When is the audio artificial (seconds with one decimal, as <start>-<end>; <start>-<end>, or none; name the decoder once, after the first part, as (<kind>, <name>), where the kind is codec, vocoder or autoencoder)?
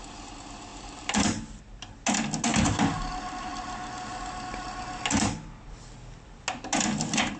0.7-1.6 (vocoder, BigVGAN v2); 2.5-3.1